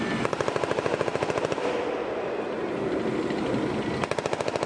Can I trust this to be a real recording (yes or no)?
yes